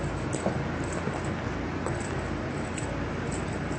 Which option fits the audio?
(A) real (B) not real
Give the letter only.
A